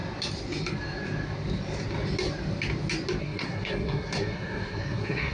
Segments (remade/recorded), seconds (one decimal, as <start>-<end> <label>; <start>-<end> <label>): 0.0-3.2 recorded; 3.2-5.3 remade